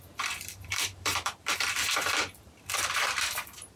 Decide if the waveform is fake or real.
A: fake